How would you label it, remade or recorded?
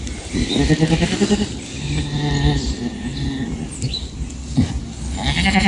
recorded